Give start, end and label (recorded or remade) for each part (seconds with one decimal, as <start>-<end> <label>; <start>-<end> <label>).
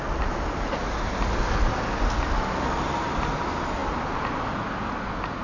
0.0-5.4 recorded